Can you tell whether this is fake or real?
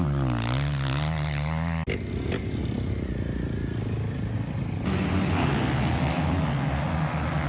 real